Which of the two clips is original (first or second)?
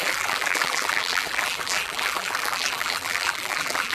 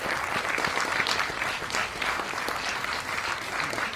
second